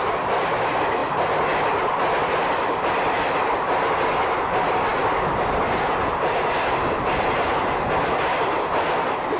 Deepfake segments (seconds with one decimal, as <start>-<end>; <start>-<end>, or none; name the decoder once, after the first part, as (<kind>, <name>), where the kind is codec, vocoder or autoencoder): none